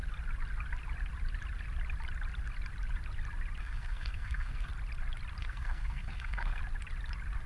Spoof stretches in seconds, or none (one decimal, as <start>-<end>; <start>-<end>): 3.6-4.7; 5.4-6.6